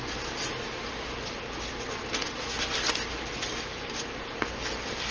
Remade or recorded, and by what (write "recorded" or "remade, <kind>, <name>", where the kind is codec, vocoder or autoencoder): recorded